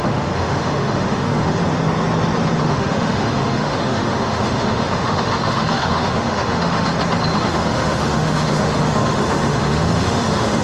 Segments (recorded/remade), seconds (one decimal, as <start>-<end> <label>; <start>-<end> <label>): 0.0-1.6 remade; 1.6-2.6 recorded; 2.6-6.9 remade; 6.9-7.4 recorded; 7.4-10.6 remade